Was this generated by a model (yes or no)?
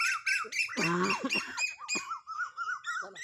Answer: no